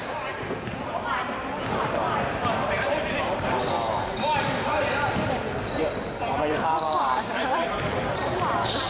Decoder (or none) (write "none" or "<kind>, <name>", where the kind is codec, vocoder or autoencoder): vocoder, BigVGAN v2